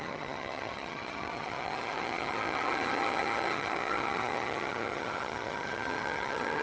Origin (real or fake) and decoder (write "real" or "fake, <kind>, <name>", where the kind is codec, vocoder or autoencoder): fake, vocoder, HiFi-GAN